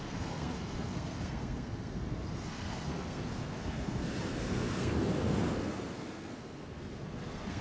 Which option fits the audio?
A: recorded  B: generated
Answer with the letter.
B